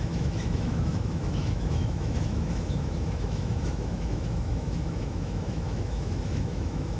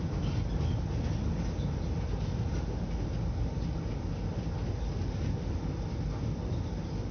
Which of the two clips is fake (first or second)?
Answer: first